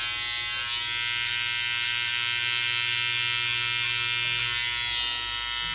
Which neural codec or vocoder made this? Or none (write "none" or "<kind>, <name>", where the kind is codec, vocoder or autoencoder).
none